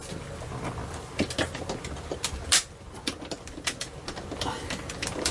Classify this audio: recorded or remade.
recorded